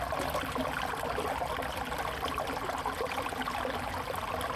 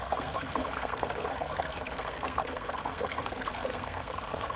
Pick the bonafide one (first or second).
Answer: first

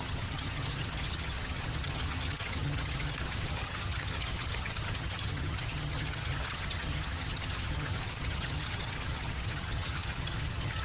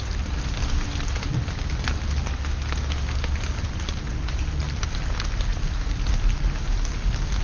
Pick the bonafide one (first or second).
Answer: second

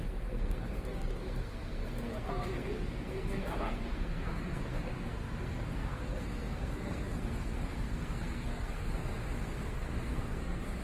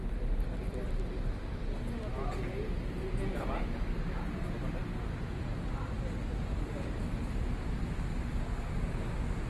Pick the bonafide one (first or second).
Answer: second